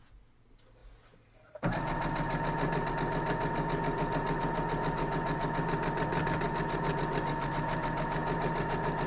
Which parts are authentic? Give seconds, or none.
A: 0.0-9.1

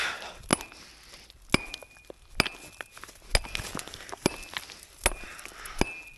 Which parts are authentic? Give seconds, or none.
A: 0.0-3.7; 4.3-6.2

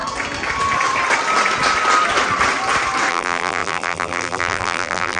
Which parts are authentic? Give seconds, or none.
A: 0.0-3.1

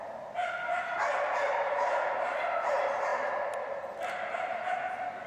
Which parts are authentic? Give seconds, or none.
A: 0.0-0.4; 2.4-5.3

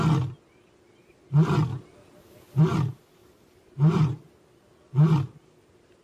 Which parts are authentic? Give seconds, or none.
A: 0.0-3.2; 4.3-6.0

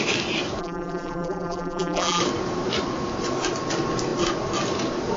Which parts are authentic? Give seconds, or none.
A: 0.0-0.6; 2.2-5.2

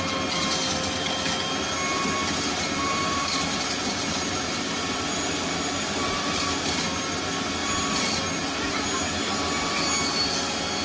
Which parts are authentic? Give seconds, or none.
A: 0.0-2.8; 6.8-7.6; 8.2-10.8

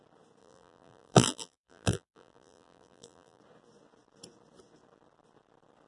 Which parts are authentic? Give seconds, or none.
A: 0.0-0.4; 3.4-5.9